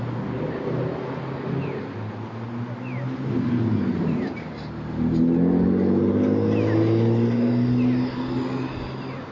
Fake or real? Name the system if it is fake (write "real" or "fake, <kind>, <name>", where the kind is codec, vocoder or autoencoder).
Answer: real